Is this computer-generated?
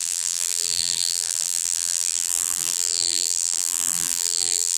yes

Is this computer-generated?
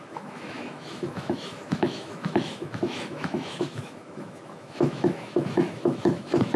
yes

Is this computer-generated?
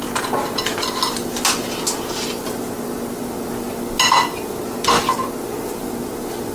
no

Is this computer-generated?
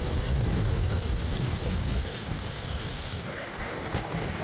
yes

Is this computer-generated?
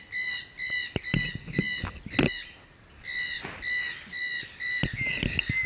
no